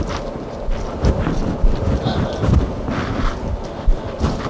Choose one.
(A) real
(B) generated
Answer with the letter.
A